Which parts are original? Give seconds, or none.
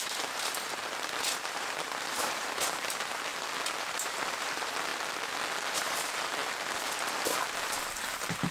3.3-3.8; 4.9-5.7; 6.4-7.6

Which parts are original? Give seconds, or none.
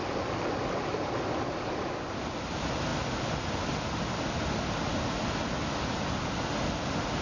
0.0-7.2